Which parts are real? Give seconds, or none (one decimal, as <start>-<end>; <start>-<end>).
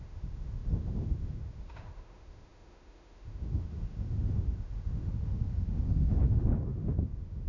none